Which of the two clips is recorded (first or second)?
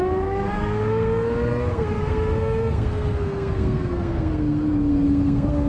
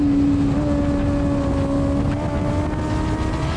second